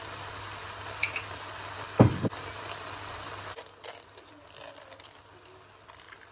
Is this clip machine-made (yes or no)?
no